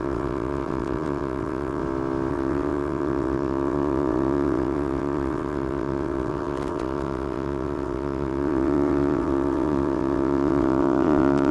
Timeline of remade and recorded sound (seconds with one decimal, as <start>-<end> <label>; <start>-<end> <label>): 0.0-1.8 remade; 1.8-2.3 recorded; 2.3-11.5 remade